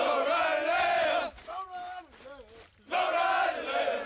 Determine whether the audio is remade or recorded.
recorded